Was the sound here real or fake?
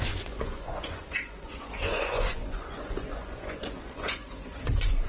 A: fake